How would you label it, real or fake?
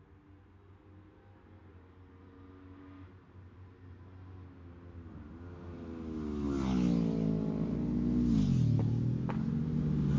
real